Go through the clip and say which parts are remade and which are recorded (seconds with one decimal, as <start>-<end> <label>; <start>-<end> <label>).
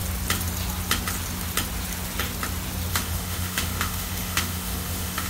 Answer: 0.0-2.9 recorded; 2.9-5.3 remade